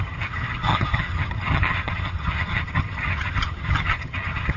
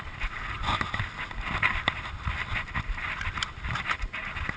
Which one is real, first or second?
second